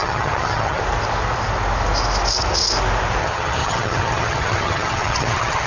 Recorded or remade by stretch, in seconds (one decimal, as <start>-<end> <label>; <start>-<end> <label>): 0.0-0.8 remade; 0.8-3.2 recorded; 3.2-5.7 remade